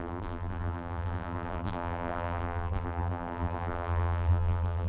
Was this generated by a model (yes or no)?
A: yes